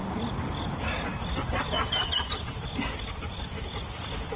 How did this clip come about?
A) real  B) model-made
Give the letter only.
B